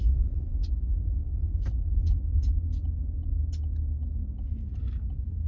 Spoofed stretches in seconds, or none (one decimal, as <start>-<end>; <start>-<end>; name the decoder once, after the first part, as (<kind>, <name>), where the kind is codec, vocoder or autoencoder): none